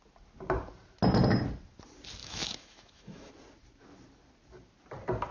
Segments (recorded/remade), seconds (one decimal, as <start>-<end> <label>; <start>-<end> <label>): 0.0-2.2 recorded; 2.2-3.3 remade; 3.3-5.3 recorded